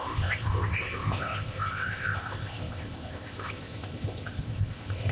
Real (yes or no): no